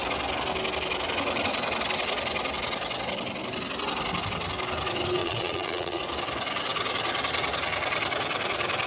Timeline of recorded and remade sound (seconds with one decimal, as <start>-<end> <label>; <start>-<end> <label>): 0.0-5.2 recorded; 5.2-6.0 remade; 6.0-8.9 recorded